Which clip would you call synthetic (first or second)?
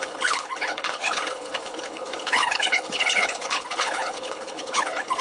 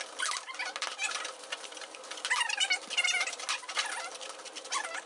first